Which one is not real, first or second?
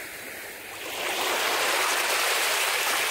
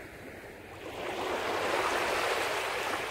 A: first